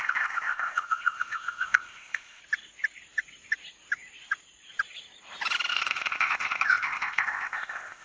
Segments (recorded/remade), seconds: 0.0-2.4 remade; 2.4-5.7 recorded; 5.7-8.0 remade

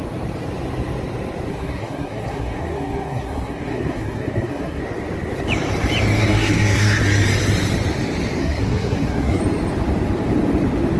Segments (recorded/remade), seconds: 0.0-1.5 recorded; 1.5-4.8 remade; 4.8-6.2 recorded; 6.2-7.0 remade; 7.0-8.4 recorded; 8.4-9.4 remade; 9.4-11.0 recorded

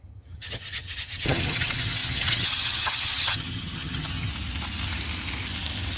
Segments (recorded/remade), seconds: 0.0-4.3 remade; 4.3-6.0 recorded